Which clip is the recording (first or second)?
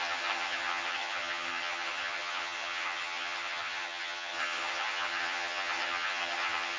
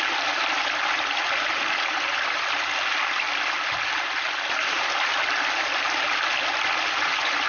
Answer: second